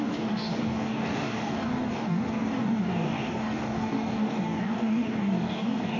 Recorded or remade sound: remade